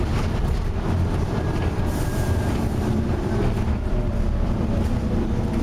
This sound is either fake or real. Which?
fake